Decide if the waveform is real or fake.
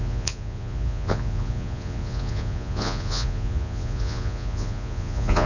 fake